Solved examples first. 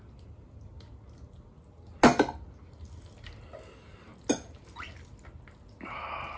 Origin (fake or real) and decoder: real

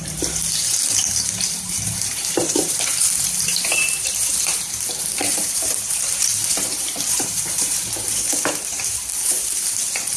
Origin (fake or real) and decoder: fake, vocoder, BigVGAN v2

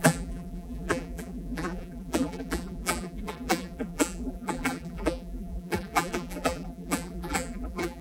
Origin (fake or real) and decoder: fake, vocoder, BigVGAN v2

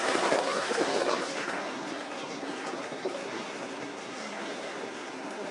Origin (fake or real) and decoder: fake, codec, SNAC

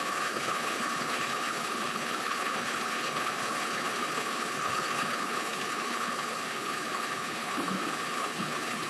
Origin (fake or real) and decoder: fake, codec, HILCodec